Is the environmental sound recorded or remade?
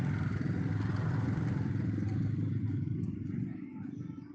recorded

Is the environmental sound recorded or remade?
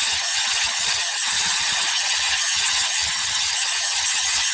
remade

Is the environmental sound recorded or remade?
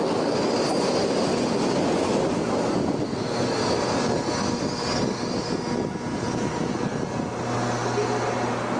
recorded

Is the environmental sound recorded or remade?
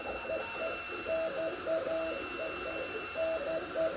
recorded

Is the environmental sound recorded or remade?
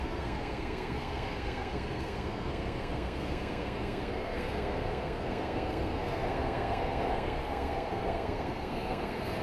remade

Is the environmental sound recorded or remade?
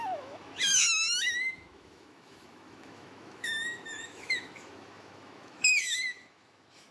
remade